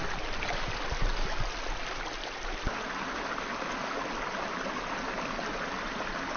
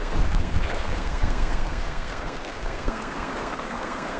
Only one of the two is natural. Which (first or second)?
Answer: first